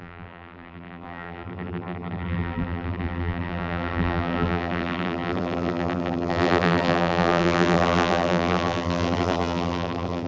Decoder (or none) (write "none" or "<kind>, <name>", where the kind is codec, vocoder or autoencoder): vocoder, BigVGAN v2